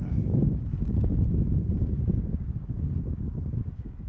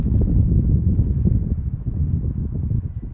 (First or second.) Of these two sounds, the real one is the second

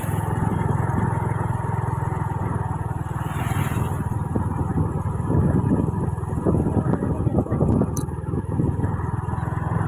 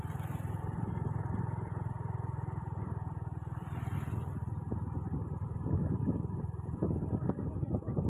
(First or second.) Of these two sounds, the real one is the first